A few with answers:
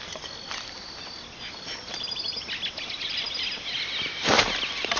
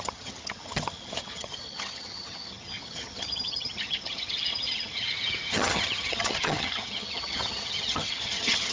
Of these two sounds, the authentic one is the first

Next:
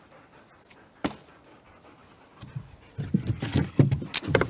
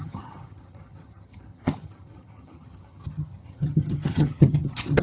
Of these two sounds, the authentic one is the first